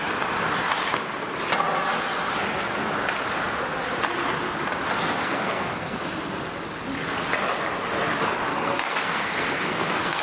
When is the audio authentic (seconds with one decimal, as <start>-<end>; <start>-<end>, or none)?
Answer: 0.0-5.2; 6.0-8.5